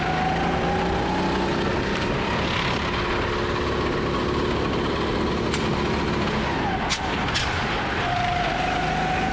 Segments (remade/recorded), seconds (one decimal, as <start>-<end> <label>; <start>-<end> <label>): 0.0-9.3 recorded